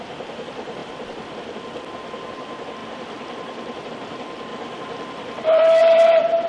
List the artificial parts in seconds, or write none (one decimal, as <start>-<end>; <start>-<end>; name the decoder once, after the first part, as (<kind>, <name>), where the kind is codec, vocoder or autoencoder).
2.8-3.9 (vocoder, BigVGAN v2); 4.5-5.8